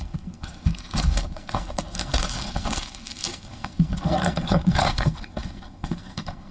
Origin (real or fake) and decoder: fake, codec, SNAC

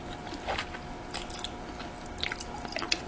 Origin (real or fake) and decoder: real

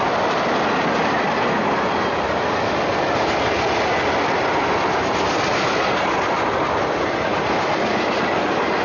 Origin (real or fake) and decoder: real